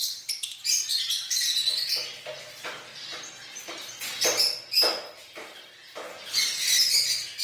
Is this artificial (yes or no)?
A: no